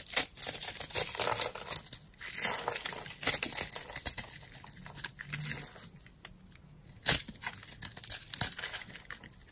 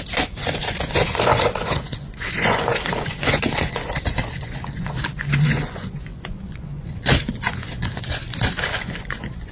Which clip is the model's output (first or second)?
second